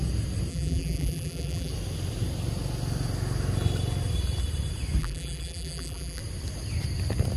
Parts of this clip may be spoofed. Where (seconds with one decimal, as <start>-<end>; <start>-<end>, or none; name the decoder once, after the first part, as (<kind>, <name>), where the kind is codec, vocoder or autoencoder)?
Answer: 0.5-1.7 (vocoder, BigVGAN v2); 5.0-6.2

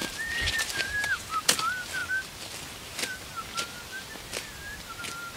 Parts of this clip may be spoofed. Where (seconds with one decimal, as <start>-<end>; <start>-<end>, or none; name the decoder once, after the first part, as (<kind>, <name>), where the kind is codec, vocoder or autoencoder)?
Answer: 0.0-1.4 (vocoder, BigVGAN v2)